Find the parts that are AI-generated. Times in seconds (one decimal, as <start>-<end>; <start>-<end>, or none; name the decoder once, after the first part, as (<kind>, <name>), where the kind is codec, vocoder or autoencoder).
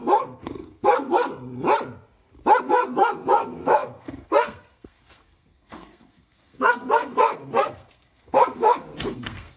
0.0-1.3 (codec, SNAC); 2.6-9.6